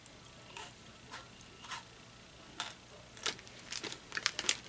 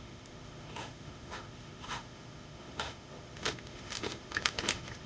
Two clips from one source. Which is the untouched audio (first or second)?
first